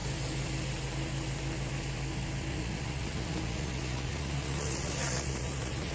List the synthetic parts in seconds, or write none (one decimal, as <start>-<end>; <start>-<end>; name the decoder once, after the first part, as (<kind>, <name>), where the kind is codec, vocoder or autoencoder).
2.5-5.9 (vocoder, Vocos)